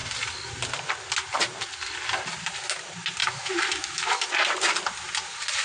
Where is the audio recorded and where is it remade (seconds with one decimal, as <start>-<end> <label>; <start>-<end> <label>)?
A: 0.0-3.2 recorded; 3.2-4.2 remade; 4.2-5.6 recorded